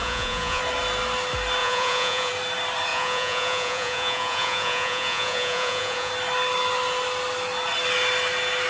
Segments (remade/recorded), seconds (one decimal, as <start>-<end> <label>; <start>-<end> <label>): 0.0-0.6 remade; 0.6-1.6 recorded; 1.6-2.3 remade; 2.3-2.9 recorded; 2.9-6.1 remade; 6.1-8.7 recorded